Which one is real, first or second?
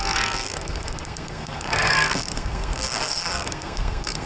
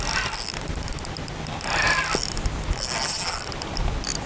second